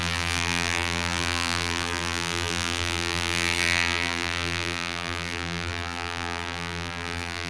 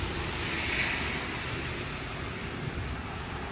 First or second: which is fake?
first